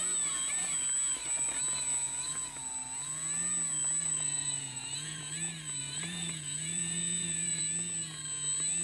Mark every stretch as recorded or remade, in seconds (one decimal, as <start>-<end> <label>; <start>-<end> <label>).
0.0-4.0 recorded; 4.0-5.2 remade; 5.2-5.8 recorded; 5.8-7.6 remade; 7.6-8.8 recorded